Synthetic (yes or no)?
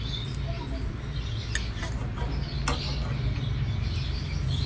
no